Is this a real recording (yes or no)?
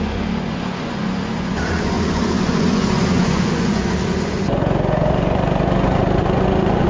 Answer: no